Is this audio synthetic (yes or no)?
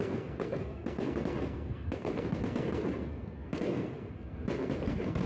yes